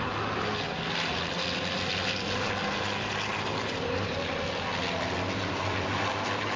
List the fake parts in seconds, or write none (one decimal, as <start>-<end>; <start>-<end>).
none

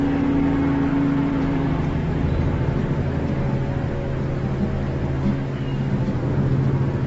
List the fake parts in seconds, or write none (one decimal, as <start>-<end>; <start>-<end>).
0.9-3.1

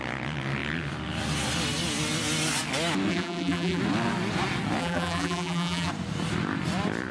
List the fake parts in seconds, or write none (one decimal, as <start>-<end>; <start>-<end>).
3.1-3.8; 4.8-5.9

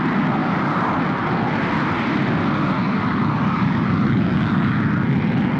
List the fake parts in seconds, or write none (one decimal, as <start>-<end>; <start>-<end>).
0.4-1.0; 2.8-4.8

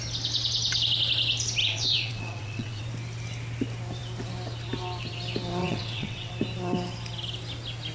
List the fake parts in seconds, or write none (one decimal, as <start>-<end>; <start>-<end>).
1.6-2.8; 5.6-6.3

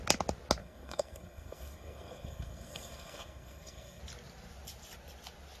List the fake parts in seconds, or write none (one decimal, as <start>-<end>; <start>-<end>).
0.6-4.0

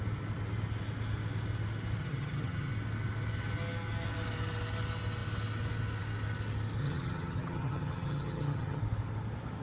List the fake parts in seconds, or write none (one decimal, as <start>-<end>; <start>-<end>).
2.0-2.7; 6.8-8.8